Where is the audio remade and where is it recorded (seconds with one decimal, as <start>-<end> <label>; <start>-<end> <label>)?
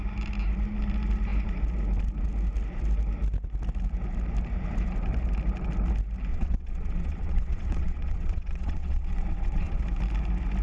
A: 0.0-6.3 recorded; 6.3-9.8 remade; 9.8-10.6 recorded